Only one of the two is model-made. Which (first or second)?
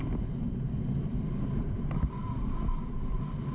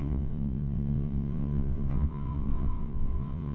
second